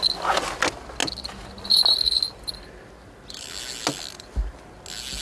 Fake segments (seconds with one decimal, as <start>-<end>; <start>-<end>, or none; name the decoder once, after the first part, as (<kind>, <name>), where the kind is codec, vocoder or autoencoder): none